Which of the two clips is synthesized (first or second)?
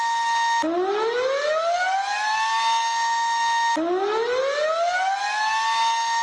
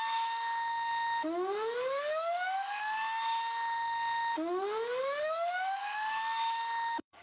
second